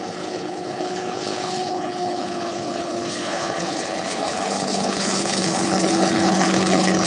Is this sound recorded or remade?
remade